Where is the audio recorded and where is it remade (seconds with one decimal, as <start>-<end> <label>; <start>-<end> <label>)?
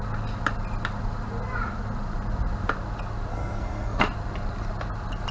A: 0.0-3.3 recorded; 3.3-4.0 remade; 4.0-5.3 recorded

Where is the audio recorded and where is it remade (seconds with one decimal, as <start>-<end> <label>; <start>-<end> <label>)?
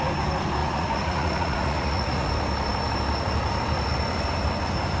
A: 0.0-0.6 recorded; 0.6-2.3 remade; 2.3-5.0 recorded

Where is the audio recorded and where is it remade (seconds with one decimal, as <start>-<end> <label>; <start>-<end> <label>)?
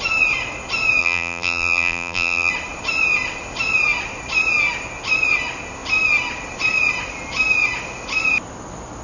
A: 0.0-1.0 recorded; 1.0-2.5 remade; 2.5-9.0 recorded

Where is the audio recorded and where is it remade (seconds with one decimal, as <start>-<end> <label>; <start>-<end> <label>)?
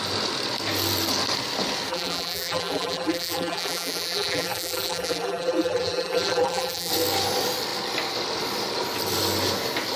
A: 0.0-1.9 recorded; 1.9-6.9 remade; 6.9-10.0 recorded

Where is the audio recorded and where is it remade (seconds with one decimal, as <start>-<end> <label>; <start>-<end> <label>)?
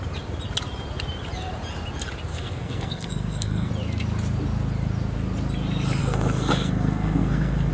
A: 0.0-2.3 recorded; 2.3-3.7 remade; 3.7-6.0 recorded; 6.0-7.7 remade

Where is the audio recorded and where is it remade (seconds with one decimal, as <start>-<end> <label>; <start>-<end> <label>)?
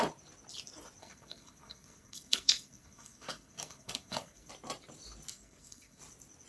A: 0.0-1.0 recorded; 1.0-4.5 remade; 4.5-5.3 recorded; 5.3-6.0 remade; 6.0-6.5 recorded